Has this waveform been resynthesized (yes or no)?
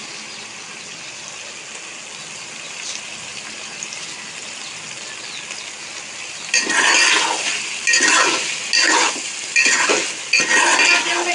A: no